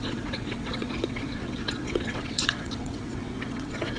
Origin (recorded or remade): remade